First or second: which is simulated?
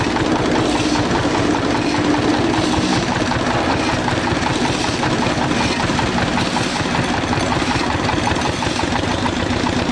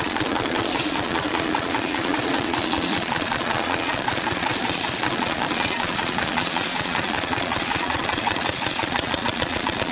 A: second